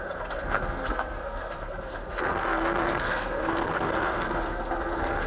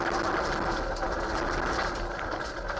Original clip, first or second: second